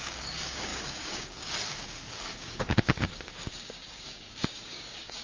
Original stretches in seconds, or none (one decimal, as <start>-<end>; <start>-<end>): none